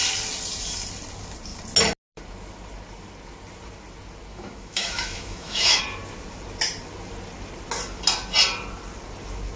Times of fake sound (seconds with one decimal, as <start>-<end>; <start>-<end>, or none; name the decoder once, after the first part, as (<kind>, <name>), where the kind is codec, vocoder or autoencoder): 4.3-5.8 (autoencoder, DAC-VAE)